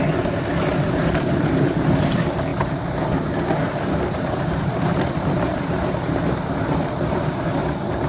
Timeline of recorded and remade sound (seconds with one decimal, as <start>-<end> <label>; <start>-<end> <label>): 0.0-0.7 recorded; 0.7-1.9 remade; 1.9-2.5 recorded; 2.5-6.9 remade; 6.9-8.1 recorded